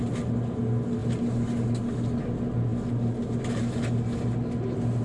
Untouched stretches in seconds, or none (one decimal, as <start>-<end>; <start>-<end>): 0.0-5.0